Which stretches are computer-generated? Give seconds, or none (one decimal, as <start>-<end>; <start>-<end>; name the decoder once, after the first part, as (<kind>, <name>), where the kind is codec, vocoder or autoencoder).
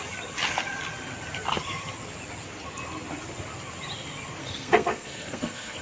4.4-5.8 (codec, SNAC)